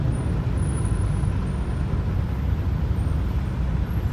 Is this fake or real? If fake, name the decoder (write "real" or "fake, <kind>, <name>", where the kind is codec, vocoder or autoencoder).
real